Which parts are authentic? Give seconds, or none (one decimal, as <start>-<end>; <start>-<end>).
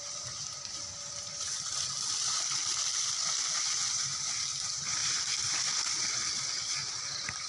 0.0-7.5